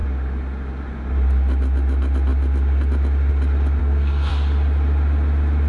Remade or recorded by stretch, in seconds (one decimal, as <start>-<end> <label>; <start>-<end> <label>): 0.0-3.8 recorded; 3.8-4.3 remade; 4.3-5.7 recorded